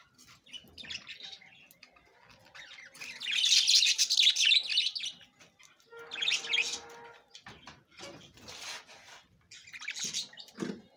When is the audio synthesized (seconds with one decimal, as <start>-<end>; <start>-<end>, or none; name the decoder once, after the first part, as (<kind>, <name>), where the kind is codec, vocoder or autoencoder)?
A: none